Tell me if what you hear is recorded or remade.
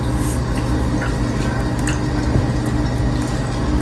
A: recorded